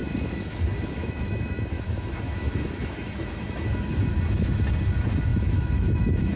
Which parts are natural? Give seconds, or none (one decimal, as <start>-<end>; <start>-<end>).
3.7-5.3

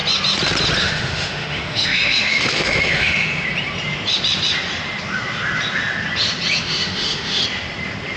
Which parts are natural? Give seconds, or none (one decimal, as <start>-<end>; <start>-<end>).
0.0-0.8; 3.3-6.6; 7.4-8.2

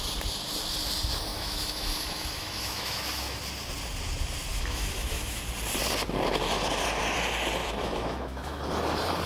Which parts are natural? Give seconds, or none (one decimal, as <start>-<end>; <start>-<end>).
0.0-1.3; 3.4-4.5; 5.4-7.6; 8.6-9.3